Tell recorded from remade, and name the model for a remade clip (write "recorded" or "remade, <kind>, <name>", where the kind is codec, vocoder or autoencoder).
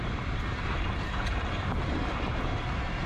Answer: remade, vocoder, BigVGAN v2